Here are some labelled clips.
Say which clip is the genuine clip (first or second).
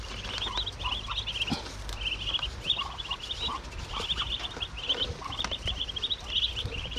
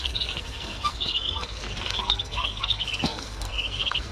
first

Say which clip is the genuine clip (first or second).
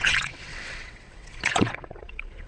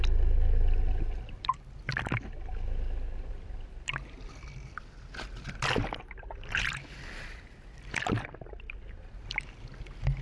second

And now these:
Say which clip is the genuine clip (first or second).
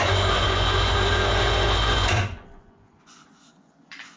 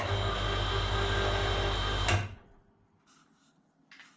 second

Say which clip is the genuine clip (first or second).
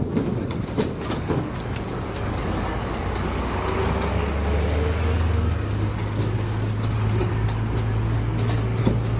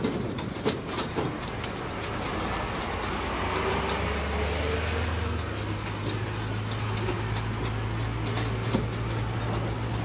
second